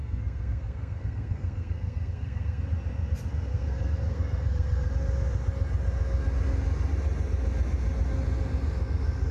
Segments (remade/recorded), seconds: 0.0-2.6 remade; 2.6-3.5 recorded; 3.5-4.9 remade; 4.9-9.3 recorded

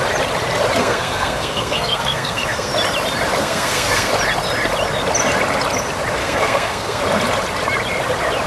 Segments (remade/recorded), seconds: 0.0-0.8 recorded; 0.8-2.7 remade; 2.7-3.4 recorded; 3.4-4.1 remade; 4.1-6.2 recorded; 6.2-7.0 remade; 7.0-8.5 recorded

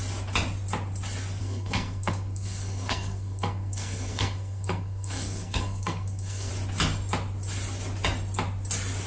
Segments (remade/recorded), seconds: 0.0-1.4 recorded; 1.4-6.5 remade; 6.5-9.1 recorded

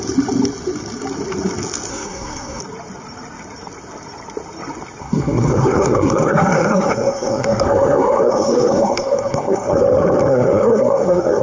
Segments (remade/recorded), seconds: 0.0-1.9 recorded; 1.9-2.6 remade; 2.6-5.0 recorded; 5.0-9.8 remade; 9.8-10.3 recorded; 10.3-11.4 remade

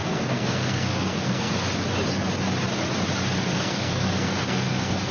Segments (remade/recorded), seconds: 0.0-1.5 remade; 1.5-3.5 recorded; 3.5-5.1 remade

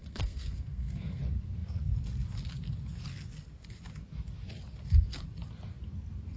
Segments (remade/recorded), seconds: 0.0-1.2 remade; 1.2-6.4 recorded